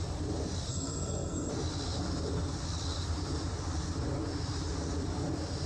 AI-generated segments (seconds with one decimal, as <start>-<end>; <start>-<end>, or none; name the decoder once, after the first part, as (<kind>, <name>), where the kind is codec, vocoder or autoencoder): 0.7-1.5 (codec, SNAC)